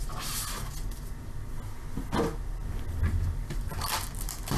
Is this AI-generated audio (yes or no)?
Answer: no